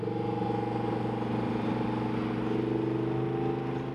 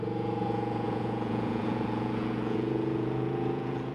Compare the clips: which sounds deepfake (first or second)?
second